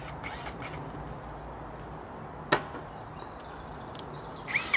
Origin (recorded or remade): recorded